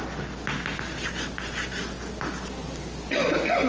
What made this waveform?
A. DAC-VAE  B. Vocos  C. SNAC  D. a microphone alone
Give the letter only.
D